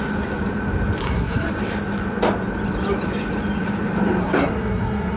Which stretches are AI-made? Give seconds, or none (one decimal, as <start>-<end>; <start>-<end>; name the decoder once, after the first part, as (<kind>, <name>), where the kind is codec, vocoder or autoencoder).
1.0-1.5 (codec, SNAC); 4.2-5.2